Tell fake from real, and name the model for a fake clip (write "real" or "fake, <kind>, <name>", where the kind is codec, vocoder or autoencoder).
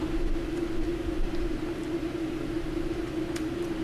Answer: real